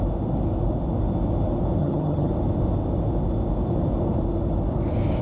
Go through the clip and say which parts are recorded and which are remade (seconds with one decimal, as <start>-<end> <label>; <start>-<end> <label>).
0.0-1.8 recorded; 1.8-2.3 remade; 2.3-5.2 recorded